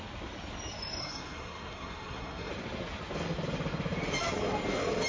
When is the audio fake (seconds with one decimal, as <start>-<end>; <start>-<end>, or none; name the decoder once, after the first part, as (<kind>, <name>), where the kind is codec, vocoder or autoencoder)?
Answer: 1.0-2.5 (codec, SNAC)